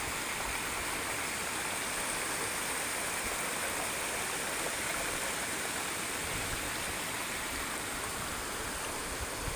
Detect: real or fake real